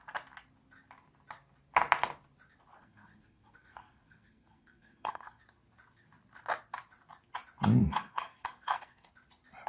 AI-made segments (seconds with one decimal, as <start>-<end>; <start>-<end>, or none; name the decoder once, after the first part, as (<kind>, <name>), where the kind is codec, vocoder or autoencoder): 2.8-5.4 (codec, SNAC); 7.8-9.1